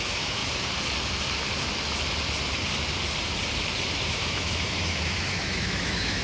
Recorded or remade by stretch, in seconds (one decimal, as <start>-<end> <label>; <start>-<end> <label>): 0.0-0.4 remade; 0.4-4.1 recorded; 4.1-6.2 remade